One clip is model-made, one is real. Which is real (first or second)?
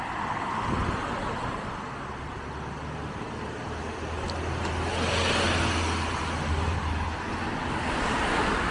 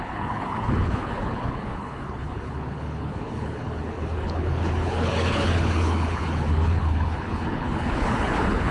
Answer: first